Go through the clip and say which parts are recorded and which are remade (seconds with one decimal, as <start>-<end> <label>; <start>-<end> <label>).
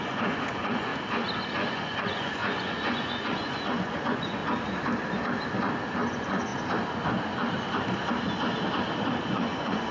0.0-0.9 remade; 0.9-1.7 recorded; 1.7-4.4 remade; 4.4-6.1 recorded; 6.1-6.5 remade; 6.5-9.2 recorded; 9.2-9.9 remade